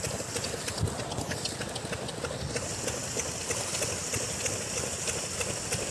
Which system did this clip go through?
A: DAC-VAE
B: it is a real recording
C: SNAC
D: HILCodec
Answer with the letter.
B